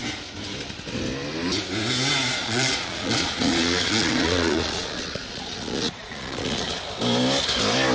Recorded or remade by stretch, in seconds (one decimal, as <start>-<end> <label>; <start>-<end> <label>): 0.0-2.4 recorded; 2.4-6.8 remade; 6.8-7.9 recorded